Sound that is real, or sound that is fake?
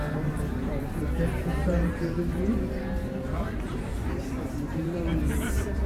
fake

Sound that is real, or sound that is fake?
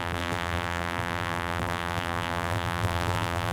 fake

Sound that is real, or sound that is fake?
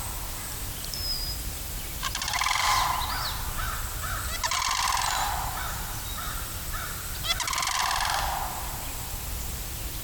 real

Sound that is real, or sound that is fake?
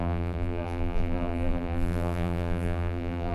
fake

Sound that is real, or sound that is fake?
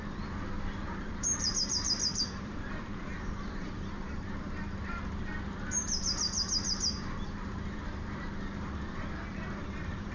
fake